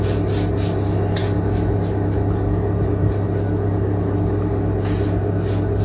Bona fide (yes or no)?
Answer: yes